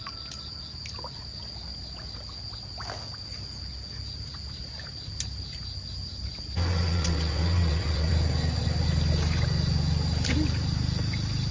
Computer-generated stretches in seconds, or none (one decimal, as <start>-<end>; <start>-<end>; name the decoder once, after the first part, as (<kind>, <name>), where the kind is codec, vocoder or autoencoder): 6.7-8.1 (vocoder, WaveNeXt)